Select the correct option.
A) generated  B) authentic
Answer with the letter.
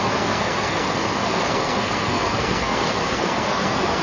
A